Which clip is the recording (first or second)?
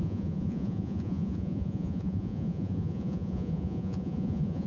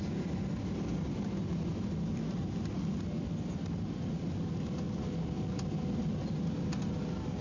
second